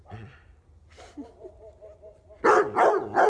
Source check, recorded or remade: recorded